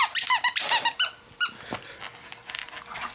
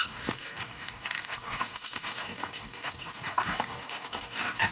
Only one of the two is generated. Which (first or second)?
second